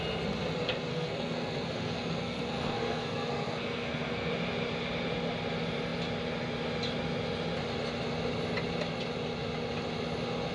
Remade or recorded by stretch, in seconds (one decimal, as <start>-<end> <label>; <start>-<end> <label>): 0.0-0.9 recorded; 0.9-4.3 remade; 4.3-10.5 recorded

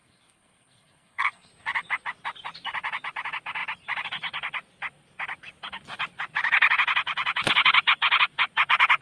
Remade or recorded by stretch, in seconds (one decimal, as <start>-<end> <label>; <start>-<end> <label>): 0.0-1.5 remade; 1.5-9.0 recorded

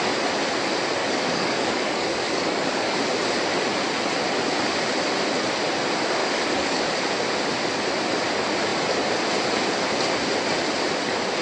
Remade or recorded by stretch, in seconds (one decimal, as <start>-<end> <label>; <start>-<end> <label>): 0.0-1.0 recorded; 1.0-3.0 remade; 3.0-6.2 recorded; 6.2-6.8 remade; 6.8-11.4 recorded

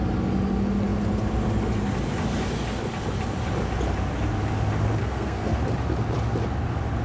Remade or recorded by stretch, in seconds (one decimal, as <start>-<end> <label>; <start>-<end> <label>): 0.0-5.0 recorded; 5.0-5.6 remade; 5.6-7.0 recorded